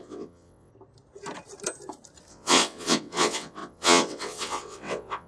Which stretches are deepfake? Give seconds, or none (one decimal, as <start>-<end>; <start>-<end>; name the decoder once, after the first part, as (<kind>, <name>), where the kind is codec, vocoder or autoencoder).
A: 0.0-0.7 (vocoder, WaveNeXt); 2.3-5.3